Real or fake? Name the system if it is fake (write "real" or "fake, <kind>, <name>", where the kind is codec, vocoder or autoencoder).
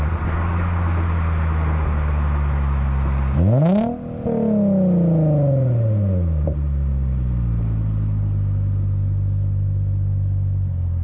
real